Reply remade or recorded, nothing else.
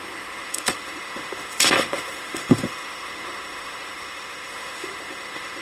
remade